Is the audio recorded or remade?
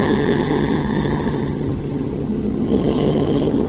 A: remade